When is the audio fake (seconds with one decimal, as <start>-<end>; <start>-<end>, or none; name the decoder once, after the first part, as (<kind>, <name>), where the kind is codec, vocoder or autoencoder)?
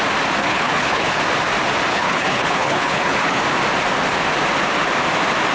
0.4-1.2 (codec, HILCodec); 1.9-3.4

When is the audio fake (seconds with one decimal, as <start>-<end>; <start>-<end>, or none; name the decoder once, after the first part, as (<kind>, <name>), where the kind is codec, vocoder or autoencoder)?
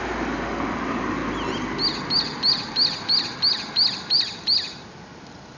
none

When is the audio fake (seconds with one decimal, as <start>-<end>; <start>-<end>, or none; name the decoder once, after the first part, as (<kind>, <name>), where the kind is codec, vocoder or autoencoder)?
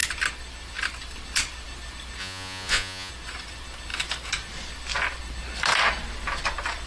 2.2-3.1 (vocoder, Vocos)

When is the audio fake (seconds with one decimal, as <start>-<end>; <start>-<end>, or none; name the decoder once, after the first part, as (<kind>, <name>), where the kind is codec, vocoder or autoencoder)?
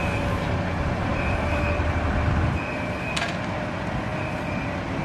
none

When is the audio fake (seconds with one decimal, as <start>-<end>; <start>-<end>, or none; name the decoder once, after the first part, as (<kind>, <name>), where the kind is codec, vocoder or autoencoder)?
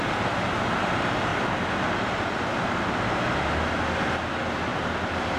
1.3-1.8 (vocoder, BigVGAN v2)